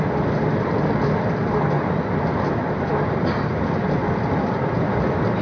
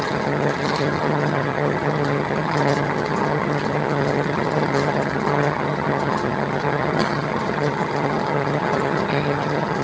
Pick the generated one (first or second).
second